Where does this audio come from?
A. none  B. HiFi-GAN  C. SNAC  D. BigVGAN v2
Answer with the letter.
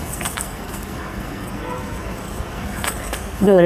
C